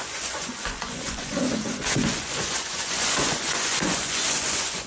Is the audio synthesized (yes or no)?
yes